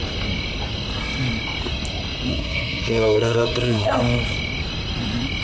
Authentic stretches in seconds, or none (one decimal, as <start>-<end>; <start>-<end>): 0.0-2.3; 4.0-5.4